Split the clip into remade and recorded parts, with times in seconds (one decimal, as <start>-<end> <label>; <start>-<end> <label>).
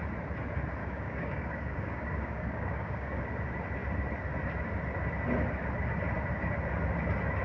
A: 0.0-0.8 recorded; 0.8-3.2 remade; 3.2-7.4 recorded